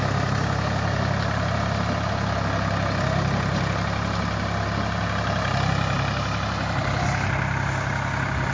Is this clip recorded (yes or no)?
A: yes